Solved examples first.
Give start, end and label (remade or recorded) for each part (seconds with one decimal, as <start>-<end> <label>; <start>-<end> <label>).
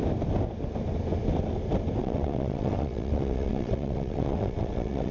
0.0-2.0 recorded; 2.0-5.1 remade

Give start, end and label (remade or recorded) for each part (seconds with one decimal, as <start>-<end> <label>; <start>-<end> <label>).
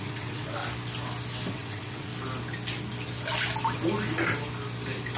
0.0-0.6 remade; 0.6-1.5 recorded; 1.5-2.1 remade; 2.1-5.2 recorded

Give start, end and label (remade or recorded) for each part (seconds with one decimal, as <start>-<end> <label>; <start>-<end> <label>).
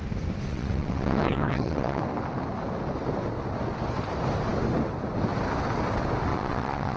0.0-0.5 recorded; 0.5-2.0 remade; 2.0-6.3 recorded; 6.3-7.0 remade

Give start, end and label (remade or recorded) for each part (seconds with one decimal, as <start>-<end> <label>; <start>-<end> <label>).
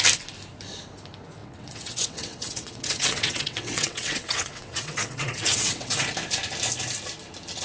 0.0-1.4 recorded; 1.4-6.0 remade; 6.0-7.6 recorded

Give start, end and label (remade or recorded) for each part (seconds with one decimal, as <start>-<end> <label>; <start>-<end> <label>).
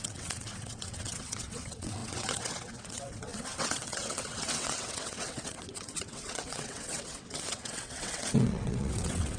0.0-9.4 remade